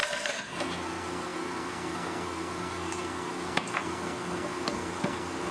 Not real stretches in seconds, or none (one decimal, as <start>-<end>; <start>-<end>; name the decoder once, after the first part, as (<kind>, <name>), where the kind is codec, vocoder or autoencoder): 0.0-5.5 (codec, SNAC)